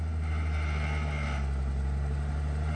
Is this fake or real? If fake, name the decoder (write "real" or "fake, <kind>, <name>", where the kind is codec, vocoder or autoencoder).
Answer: real